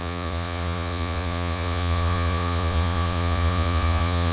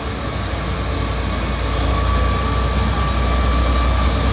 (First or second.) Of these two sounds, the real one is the second